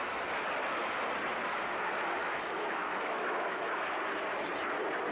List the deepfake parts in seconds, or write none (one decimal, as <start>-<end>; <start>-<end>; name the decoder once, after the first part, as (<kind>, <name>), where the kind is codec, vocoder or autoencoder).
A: 2.2-3.8 (autoencoder, DAC-VAE)